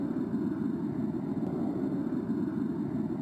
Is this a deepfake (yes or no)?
no